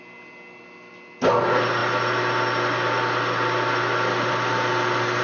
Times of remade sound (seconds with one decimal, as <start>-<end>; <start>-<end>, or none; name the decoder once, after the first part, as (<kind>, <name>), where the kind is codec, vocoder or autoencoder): none